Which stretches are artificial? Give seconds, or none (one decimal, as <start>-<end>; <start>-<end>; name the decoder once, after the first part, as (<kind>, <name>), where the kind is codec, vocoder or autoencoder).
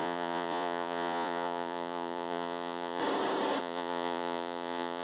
0.0-3.0 (vocoder, Vocos); 3.6-5.0